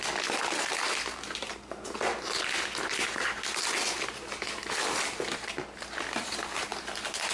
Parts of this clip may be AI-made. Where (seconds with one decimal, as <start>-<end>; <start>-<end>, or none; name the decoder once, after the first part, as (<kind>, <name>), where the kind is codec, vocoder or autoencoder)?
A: none